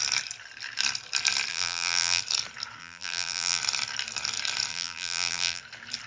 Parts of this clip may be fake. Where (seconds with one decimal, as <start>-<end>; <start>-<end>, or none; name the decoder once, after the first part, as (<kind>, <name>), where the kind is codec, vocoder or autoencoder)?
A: 1.5-2.2 (vocoder, BigVGAN v2); 2.8-3.6; 4.7-5.6

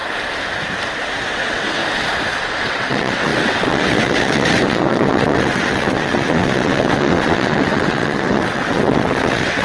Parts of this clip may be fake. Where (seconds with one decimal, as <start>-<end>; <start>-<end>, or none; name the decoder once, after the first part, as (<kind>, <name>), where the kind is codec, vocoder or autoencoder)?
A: 1.3-1.8 (vocoder, WaveNeXt); 2.4-9.6

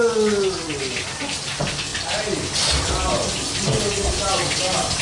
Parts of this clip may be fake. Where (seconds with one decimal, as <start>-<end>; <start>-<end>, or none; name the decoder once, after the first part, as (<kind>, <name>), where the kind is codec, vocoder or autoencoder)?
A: none

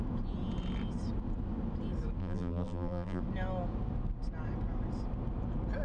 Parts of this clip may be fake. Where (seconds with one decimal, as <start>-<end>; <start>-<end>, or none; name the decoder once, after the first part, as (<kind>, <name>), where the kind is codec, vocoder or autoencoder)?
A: 2.2-3.2 (vocoder, BigVGAN v2)

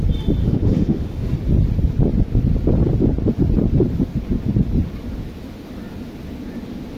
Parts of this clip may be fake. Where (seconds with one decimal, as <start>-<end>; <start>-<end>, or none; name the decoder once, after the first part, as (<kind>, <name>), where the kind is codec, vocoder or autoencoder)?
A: 0.4-1.3 (autoencoder, DAC-VAE)

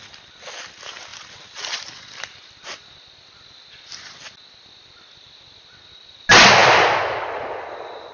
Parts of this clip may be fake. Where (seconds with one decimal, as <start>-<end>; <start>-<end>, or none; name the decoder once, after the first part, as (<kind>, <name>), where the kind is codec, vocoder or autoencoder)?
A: 1.1-1.9 (vocoder, BigVGAN v2); 6.6-8.1

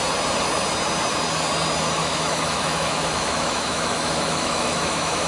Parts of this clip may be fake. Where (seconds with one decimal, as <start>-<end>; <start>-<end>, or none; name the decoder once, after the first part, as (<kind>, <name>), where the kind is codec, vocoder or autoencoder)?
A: 2.0-5.3 (autoencoder, DAC-VAE)

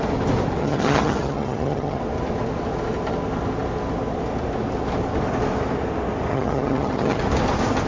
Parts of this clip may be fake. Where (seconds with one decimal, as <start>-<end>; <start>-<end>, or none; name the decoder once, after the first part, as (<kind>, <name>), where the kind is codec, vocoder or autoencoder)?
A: 0.6-2.0 (vocoder, HiFi-GAN); 6.3-7.2